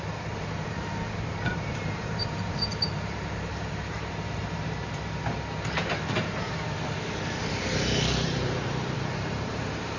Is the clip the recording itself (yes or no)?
no